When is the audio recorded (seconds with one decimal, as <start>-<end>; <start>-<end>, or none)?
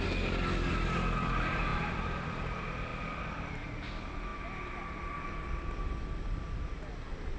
0.0-1.7; 2.4-7.4